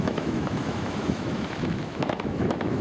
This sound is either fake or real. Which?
fake